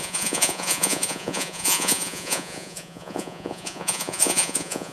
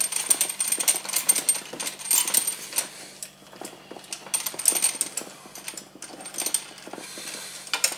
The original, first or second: second